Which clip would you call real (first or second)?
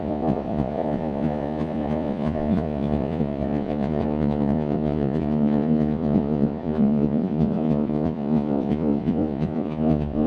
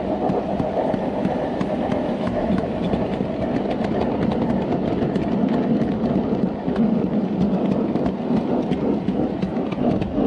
second